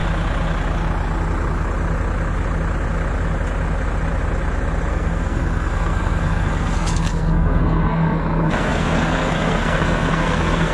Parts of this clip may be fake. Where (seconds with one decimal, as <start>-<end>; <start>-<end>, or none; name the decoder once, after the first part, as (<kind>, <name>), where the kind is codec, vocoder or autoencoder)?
4.9-10.7 (codec, SNAC)